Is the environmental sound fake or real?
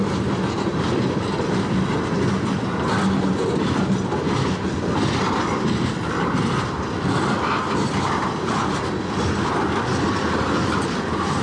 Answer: real